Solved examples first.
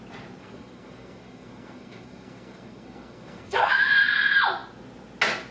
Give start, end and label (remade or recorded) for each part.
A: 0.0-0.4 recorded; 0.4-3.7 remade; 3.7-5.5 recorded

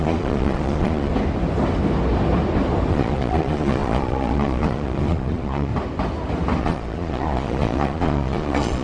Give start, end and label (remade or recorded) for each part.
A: 0.0-1.1 remade; 1.1-2.9 recorded; 2.9-5.7 remade; 5.7-6.6 recorded; 6.6-8.8 remade